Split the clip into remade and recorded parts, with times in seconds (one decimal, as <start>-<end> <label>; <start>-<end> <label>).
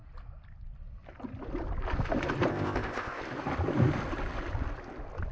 0.0-2.5 recorded; 2.5-3.2 remade; 3.2-5.3 recorded